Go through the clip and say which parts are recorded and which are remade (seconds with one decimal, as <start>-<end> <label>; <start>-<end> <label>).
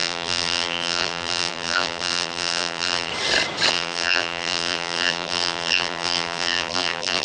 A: 0.0-3.1 remade; 3.1-3.7 recorded; 3.7-7.2 remade